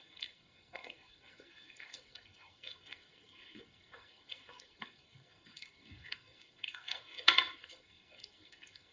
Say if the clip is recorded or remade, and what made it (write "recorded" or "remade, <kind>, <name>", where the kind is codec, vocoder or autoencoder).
remade, codec, SNAC